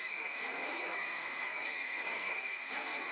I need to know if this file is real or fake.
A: fake